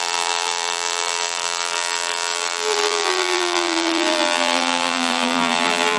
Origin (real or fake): fake